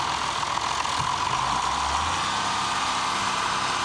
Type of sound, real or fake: real